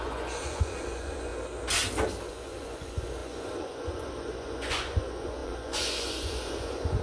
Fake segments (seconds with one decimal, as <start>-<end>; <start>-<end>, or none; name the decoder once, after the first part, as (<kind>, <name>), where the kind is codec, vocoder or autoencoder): 0.0-1.3 (vocoder, Vocos); 2.3-7.0